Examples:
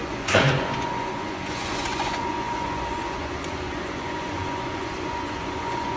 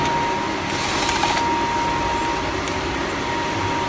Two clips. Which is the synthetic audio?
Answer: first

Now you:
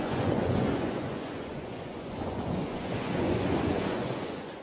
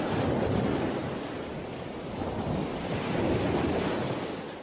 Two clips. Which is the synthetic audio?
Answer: first